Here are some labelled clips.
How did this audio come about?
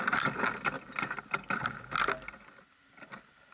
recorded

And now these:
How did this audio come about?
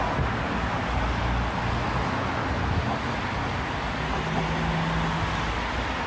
recorded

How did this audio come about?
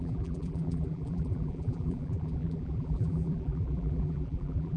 remade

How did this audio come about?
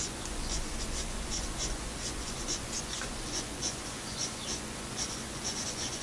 remade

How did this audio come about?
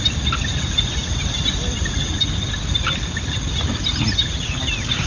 recorded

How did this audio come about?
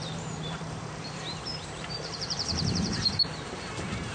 remade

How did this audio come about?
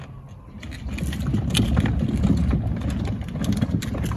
recorded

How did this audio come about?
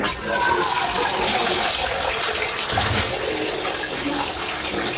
recorded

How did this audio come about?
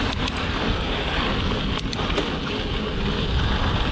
recorded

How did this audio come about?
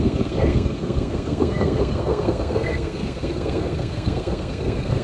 remade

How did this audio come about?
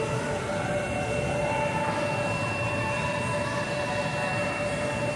recorded